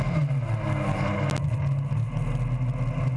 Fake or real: real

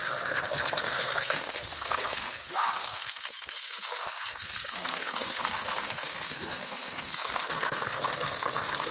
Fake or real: fake